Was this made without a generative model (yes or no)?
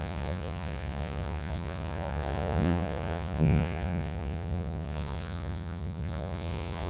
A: no